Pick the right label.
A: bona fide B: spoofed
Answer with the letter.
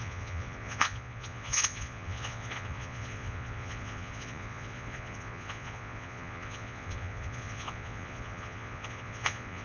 B